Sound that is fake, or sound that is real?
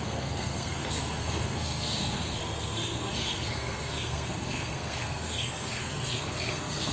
fake